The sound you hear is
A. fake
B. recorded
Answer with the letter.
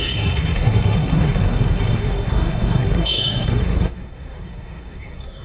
A